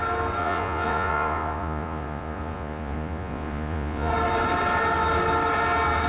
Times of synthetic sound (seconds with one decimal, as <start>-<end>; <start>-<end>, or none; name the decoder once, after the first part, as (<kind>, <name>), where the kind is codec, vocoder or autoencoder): 0.4-4.1 (vocoder, Vocos)